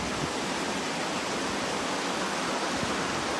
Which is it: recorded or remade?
recorded